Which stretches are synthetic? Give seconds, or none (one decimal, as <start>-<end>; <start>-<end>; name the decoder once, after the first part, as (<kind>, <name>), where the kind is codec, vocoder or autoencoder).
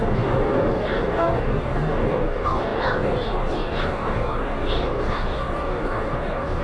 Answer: 0.0-6.6 (codec, DAC)